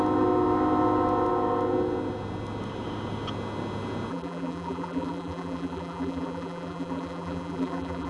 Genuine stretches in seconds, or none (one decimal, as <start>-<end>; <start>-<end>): 0.0-4.1